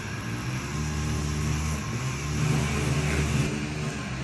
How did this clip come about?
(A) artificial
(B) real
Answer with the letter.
B